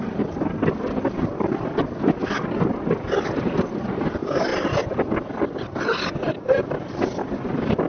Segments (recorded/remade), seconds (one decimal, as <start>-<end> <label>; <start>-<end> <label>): 0.0-2.2 remade; 2.2-3.3 recorded; 3.3-4.5 remade; 4.5-6.6 recorded; 6.6-7.9 remade